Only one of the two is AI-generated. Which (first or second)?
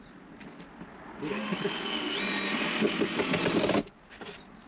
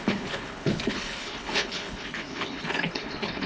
second